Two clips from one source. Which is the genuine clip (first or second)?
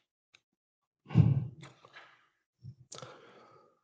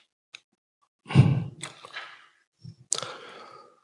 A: second